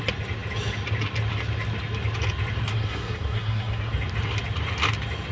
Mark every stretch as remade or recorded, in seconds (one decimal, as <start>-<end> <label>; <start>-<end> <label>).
0.0-2.7 recorded; 2.7-3.9 remade; 3.9-5.3 recorded